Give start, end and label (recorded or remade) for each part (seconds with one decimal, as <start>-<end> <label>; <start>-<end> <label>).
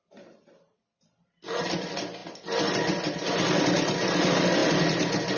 0.0-5.4 recorded